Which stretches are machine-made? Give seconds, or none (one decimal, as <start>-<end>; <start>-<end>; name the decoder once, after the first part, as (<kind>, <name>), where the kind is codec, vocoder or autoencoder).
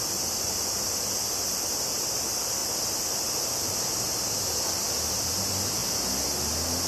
none